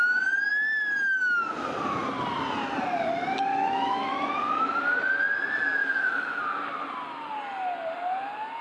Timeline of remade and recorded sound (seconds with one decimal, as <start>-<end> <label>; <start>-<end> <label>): 0.0-3.5 recorded; 3.5-4.8 remade; 4.8-5.8 recorded; 5.8-6.4 remade; 6.4-8.6 recorded